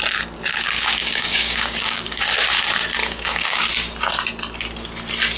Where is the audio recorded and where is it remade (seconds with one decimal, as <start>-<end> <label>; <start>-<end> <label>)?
0.0-0.5 recorded; 0.5-2.2 remade; 2.2-3.0 recorded; 3.0-3.7 remade; 3.7-5.4 recorded